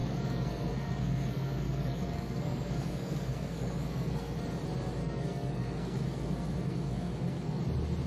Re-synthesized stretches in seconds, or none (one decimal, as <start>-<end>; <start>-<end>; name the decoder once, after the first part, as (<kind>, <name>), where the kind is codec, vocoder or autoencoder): 0.0-4.4 (codec, SNAC); 5.0-7.6